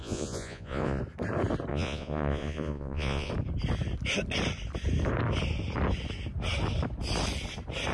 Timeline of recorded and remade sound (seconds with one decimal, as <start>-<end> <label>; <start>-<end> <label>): 0.0-1.0 remade; 1.0-1.7 recorded; 1.7-3.3 remade; 3.3-7.9 recorded